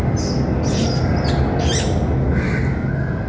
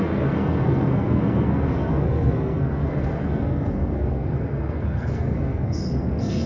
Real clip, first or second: first